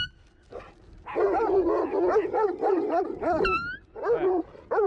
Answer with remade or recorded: recorded